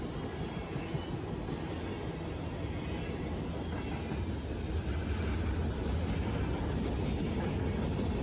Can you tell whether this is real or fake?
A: real